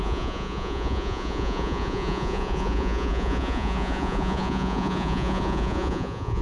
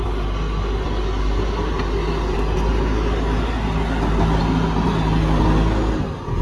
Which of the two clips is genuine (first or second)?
second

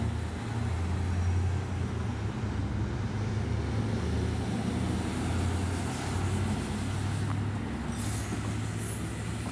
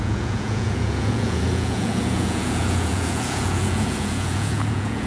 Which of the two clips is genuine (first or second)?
first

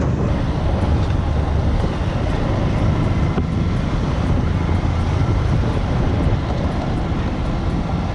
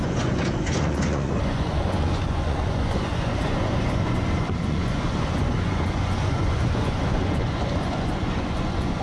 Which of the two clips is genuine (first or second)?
first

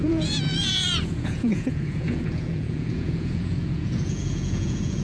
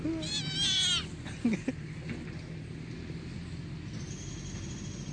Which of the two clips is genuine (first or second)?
second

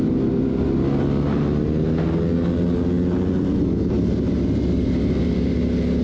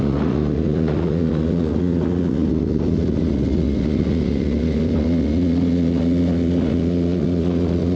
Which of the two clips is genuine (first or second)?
first